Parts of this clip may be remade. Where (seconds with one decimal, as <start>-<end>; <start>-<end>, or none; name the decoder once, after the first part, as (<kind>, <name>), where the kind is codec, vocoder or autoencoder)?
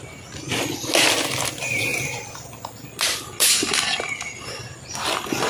none